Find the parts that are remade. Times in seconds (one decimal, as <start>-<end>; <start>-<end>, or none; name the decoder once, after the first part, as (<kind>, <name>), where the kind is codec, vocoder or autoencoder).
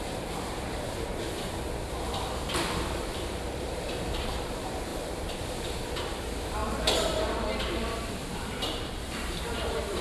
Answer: 0.0-1.1 (vocoder, BigVGAN v2); 2.0-10.0